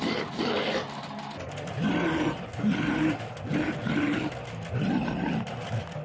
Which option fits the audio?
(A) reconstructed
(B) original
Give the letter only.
B